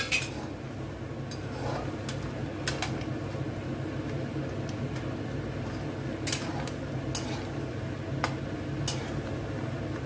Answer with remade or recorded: recorded